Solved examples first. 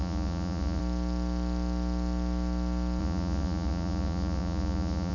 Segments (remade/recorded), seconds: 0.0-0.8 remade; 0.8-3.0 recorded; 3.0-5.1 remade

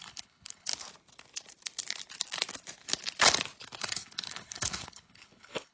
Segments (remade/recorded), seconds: 0.0-0.7 remade; 0.7-3.8 recorded; 3.8-5.7 remade